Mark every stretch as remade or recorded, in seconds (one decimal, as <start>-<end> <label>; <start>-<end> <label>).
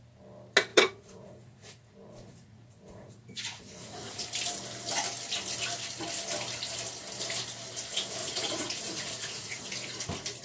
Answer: 0.0-0.7 recorded; 0.7-4.3 remade; 4.3-8.2 recorded; 8.2-9.6 remade; 9.6-10.4 recorded